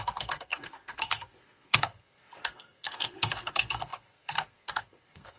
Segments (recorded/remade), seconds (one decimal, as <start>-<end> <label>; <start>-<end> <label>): 0.0-5.4 remade